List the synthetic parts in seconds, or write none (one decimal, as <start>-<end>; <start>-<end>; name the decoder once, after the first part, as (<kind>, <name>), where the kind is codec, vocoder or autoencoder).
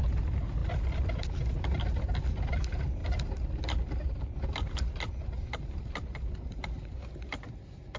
none